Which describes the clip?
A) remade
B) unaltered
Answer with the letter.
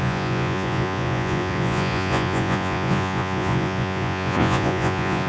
A